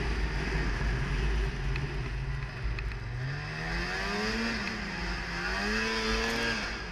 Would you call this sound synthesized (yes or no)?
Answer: no